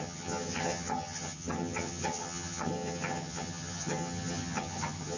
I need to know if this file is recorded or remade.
remade